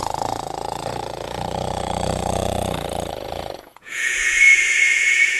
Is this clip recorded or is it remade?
remade